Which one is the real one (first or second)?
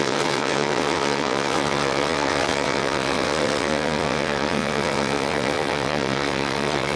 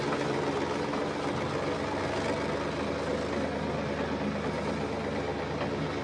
second